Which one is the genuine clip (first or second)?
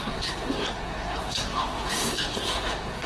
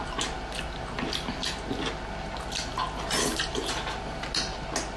second